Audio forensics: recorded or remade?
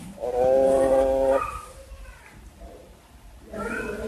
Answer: recorded